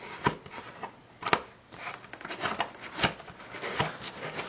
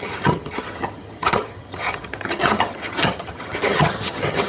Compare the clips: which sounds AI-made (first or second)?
second